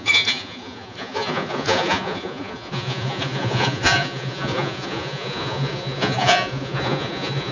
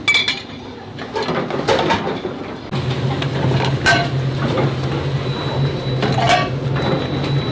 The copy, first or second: first